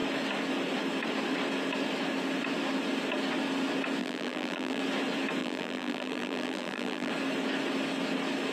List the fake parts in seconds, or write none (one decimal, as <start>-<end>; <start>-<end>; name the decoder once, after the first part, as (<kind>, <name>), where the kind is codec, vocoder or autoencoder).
4.0-4.8 (vocoder, BigVGAN v2); 5.4-7.1